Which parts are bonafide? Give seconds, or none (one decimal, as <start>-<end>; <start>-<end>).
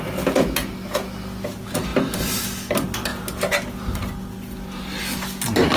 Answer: 0.0-5.8